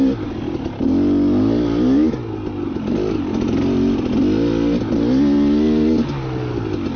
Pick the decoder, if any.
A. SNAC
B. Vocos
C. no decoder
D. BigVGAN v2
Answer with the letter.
C